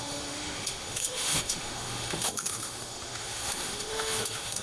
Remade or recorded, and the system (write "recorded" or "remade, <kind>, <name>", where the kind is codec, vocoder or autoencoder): remade, autoencoder, DAC-VAE